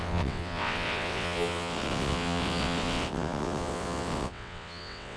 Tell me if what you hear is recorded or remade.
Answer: remade